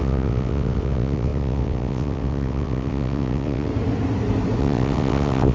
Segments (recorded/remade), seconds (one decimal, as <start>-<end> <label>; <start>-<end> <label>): 0.0-3.7 remade; 3.7-4.6 recorded; 4.6-5.5 remade